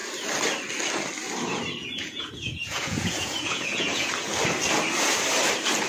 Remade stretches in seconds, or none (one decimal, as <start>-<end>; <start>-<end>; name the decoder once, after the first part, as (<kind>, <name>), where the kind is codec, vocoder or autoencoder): 1.8-4.1 (vocoder, Vocos)